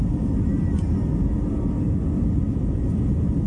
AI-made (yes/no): no